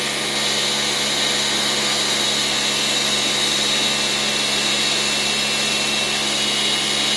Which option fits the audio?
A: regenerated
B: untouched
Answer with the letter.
B